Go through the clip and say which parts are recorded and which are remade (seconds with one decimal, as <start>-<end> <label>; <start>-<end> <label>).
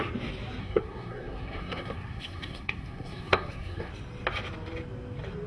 0.0-0.6 recorded; 0.6-3.9 remade; 3.9-5.5 recorded